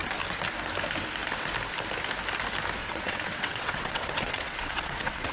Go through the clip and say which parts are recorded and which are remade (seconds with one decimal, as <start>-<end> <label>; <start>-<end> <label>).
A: 0.0-2.8 recorded; 2.8-5.3 remade